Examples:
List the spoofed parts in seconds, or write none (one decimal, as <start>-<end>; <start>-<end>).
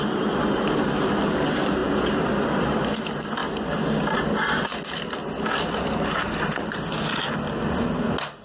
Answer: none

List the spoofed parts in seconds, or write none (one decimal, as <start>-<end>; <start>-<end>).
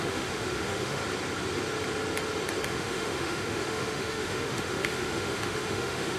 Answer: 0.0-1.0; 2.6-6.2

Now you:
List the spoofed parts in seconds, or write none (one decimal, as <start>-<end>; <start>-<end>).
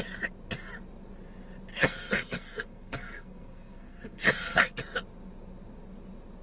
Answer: 1.7-4.8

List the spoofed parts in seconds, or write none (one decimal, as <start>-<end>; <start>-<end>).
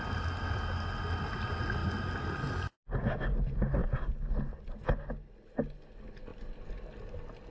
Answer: none